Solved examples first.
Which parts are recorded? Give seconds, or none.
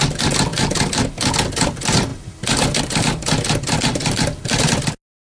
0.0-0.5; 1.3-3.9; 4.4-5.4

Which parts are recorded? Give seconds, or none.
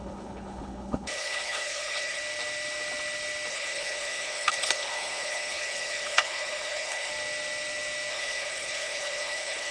2.2-3.5; 7.1-8.1